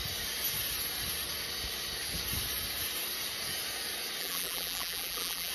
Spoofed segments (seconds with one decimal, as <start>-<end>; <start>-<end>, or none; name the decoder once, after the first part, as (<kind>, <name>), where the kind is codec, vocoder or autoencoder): 4.2-5.5 (vocoder, BigVGAN v2)

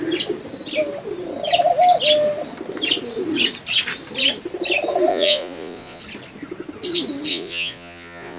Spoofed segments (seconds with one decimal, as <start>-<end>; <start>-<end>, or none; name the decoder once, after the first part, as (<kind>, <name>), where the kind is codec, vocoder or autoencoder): 5.1-6.0 (vocoder, Vocos); 7.3-8.4